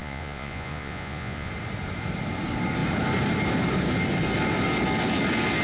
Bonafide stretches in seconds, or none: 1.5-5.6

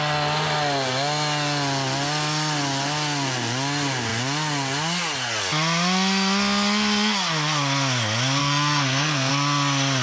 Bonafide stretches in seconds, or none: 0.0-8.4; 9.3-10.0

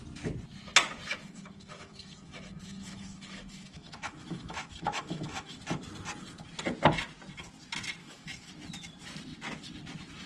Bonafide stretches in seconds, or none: 0.0-1.1; 5.6-8.0; 8.5-10.3